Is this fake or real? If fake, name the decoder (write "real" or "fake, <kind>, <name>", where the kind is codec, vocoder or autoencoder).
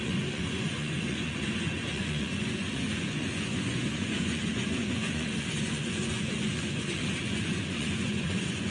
fake, vocoder, Vocos